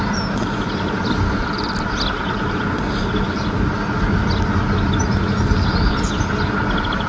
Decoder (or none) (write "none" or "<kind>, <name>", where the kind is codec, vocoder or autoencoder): none